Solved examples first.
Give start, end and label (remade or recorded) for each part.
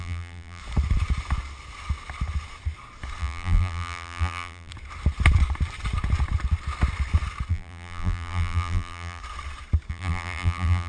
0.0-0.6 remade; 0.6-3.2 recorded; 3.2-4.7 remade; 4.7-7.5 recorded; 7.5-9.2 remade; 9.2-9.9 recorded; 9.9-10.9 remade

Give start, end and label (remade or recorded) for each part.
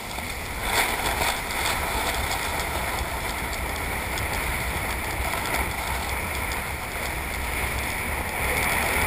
0.0-2.5 recorded; 2.5-4.2 remade; 4.2-9.1 recorded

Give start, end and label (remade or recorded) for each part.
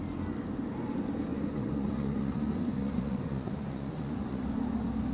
0.0-1.3 recorded; 1.3-4.4 remade; 4.4-5.1 recorded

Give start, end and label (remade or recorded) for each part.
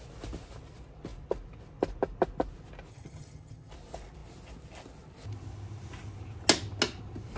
0.0-2.9 recorded; 2.9-3.7 remade; 3.7-7.4 recorded